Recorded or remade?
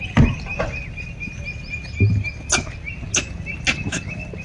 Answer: recorded